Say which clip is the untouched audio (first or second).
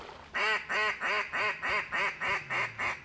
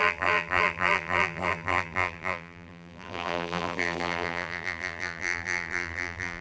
first